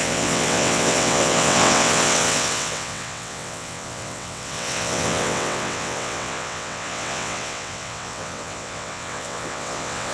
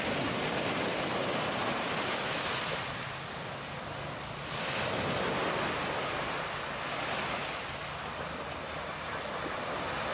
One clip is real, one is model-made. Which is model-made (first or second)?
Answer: first